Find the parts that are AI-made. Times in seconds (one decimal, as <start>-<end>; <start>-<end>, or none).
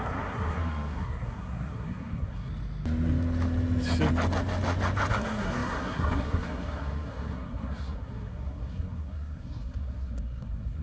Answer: 0.0-2.5; 5.1-10.8